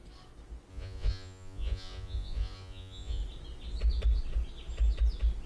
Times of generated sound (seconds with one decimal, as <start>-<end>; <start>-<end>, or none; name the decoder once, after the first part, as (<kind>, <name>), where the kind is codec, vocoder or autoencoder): 0.7-3.2 (vocoder, Vocos)